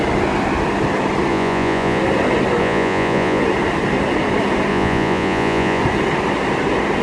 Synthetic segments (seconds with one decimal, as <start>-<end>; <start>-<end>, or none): 1.3-2.0; 2.6-3.4; 4.7-5.8